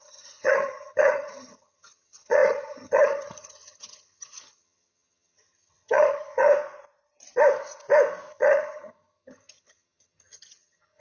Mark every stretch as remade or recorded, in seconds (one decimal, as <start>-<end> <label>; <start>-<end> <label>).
0.0-6.5 remade; 6.5-8.3 recorded; 8.3-11.0 remade